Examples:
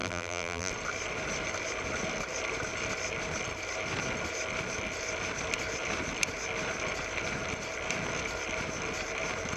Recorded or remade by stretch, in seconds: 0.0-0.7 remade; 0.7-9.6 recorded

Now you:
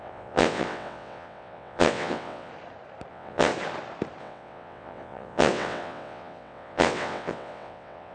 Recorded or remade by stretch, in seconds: 0.0-2.5 remade; 2.5-3.1 recorded; 3.1-3.5 remade; 3.5-4.2 recorded; 4.2-8.1 remade

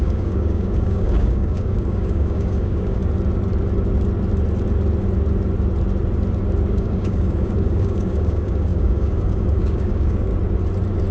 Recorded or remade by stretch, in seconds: 0.0-3.0 remade; 3.0-6.7 recorded; 6.7-10.3 remade; 10.3-11.1 recorded